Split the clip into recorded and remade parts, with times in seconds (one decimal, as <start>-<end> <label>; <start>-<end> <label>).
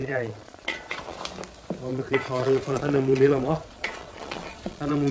0.0-1.2 remade; 1.2-1.9 recorded; 1.9-5.1 remade